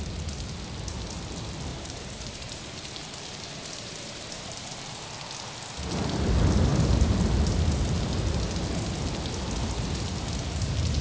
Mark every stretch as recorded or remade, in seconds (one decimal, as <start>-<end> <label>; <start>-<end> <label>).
0.0-1.7 recorded; 1.7-5.0 remade; 5.0-11.0 recorded